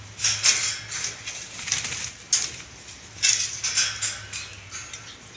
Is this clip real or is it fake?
real